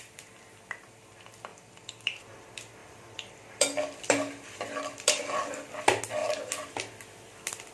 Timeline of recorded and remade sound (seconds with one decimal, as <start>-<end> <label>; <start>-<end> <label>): 0.0-1.5 recorded; 1.5-2.2 remade; 2.2-2.8 recorded; 2.8-5.7 remade; 5.7-7.7 recorded